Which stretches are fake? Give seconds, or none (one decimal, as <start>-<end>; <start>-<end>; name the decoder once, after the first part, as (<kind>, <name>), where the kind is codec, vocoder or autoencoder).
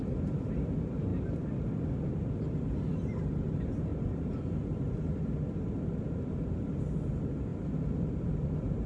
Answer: 1.1-1.8 (vocoder, BigVGAN v2); 3.9-4.5; 7.5-8.9